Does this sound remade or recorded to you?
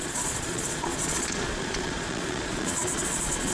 remade